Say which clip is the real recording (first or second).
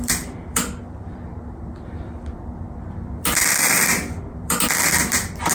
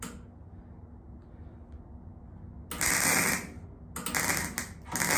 second